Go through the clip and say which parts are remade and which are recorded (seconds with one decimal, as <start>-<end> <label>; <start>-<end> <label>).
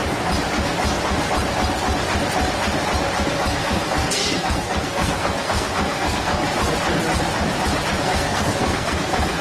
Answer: 0.0-3.6 recorded; 3.6-6.4 remade; 6.4-8.0 recorded; 8.0-9.4 remade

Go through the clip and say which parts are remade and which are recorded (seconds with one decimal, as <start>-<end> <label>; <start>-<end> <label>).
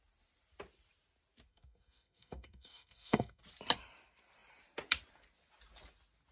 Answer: 0.0-1.5 recorded; 1.5-3.4 remade; 3.4-6.3 recorded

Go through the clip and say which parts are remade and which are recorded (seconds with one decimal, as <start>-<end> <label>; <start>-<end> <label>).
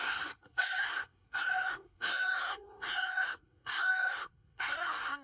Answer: 0.0-5.2 remade